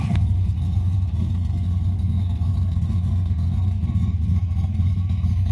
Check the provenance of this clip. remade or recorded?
remade